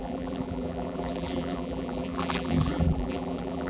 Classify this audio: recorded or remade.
remade